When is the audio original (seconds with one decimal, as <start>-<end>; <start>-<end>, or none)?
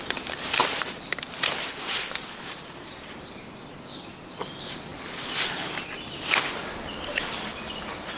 0.0-8.2